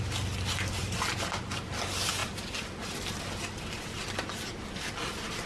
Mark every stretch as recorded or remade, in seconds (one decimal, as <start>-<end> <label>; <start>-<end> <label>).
0.0-0.8 remade; 0.8-1.4 recorded; 1.4-2.2 remade; 2.2-2.7 recorded; 2.7-5.5 remade